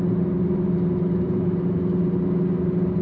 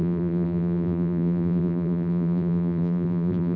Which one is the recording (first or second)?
first